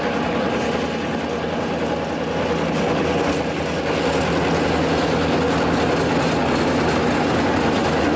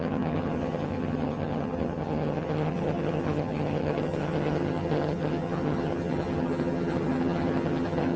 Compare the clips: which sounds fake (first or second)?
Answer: second